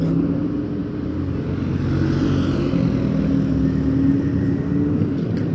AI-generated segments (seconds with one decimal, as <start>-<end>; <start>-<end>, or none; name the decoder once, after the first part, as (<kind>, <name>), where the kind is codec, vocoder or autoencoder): none